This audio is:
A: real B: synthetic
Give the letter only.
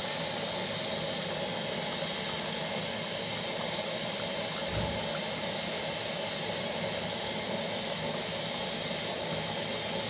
A